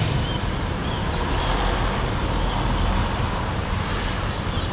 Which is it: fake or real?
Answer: real